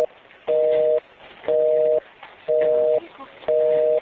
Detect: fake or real real